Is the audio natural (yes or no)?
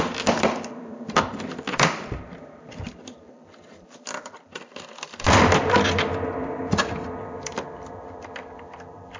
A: no